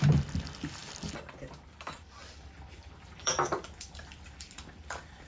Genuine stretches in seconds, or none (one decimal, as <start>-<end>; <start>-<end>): 0.0-2.2; 4.8-5.3